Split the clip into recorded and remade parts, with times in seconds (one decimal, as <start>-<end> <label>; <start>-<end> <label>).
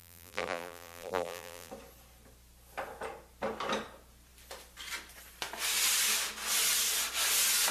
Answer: 0.0-1.7 remade; 1.7-7.7 recorded